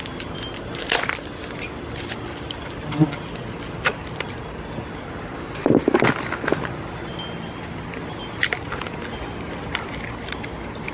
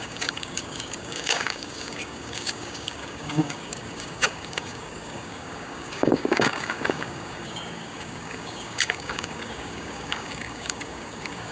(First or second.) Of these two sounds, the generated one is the second